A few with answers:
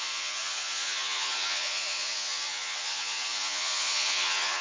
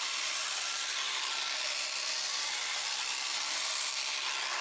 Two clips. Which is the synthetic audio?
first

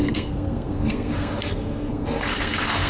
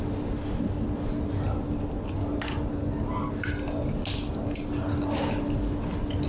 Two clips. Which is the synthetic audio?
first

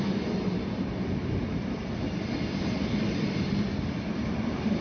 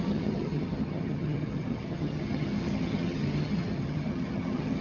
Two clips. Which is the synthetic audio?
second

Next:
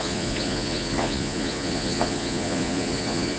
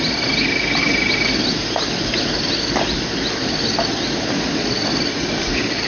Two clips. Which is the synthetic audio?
first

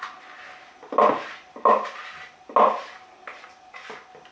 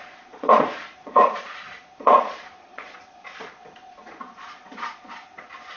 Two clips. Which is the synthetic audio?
second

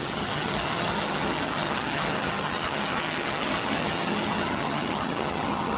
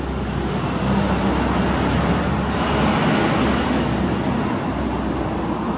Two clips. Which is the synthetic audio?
first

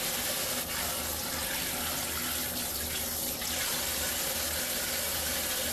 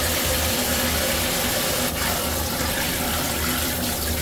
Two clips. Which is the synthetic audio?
second